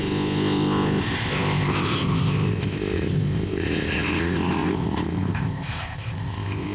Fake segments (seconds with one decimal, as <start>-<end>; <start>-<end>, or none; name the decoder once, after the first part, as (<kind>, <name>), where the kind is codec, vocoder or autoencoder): 0.0-6.7 (codec, ZipCodec)